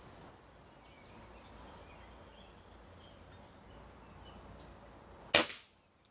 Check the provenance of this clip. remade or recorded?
recorded